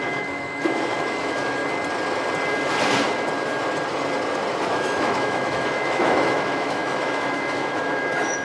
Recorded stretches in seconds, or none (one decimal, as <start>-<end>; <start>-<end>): 1.6-4.7